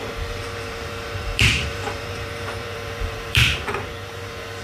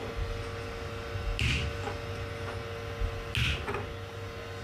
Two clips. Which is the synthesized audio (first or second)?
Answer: first